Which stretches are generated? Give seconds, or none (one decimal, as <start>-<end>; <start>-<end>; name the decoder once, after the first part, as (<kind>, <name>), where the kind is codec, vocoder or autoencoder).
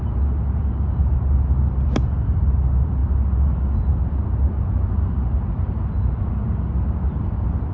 none